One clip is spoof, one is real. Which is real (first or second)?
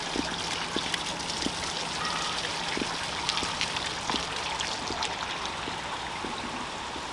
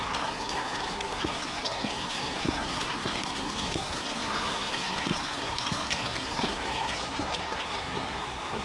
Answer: first